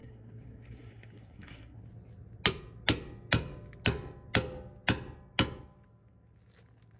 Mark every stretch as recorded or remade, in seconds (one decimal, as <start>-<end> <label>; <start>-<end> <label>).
0.0-1.8 remade; 1.8-7.0 recorded